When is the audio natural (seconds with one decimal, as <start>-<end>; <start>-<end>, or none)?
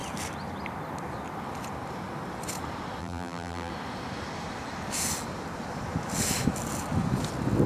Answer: 0.0-3.0; 3.7-7.7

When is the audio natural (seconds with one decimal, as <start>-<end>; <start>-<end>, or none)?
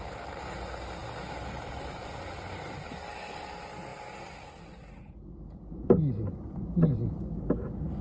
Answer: 0.0-8.0